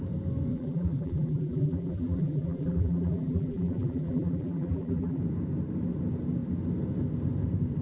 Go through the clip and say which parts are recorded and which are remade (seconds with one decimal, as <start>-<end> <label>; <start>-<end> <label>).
0.0-0.5 recorded; 0.5-5.2 remade; 5.2-7.8 recorded